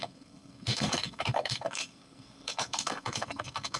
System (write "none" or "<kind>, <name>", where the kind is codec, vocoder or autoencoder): codec, SNAC